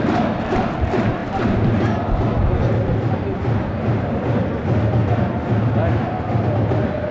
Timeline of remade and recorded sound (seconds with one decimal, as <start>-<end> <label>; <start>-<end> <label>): 0.0-7.1 recorded